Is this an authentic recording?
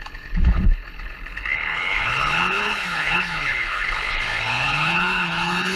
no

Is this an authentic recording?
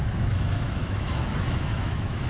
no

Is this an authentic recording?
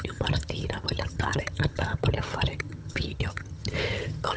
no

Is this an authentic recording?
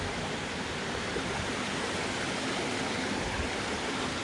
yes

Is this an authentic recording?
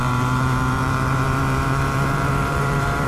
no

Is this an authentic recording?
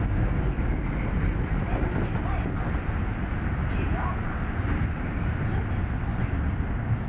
yes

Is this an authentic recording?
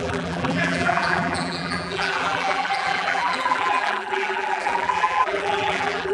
no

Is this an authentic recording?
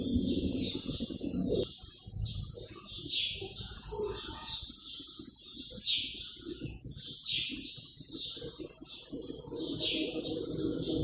no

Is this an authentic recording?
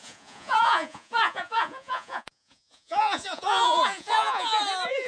no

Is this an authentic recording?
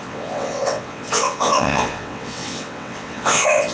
no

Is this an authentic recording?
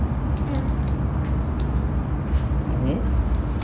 yes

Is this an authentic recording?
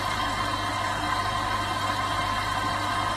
yes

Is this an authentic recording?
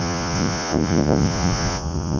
no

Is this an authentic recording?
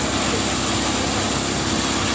yes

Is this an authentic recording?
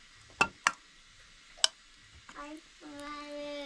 yes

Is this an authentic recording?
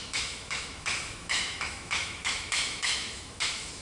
no